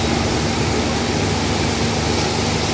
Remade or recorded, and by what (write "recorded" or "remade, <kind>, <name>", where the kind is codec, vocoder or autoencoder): recorded